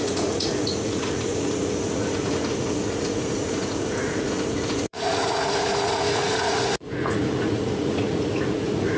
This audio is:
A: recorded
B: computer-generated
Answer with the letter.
B